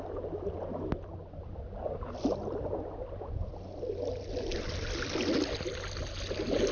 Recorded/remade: recorded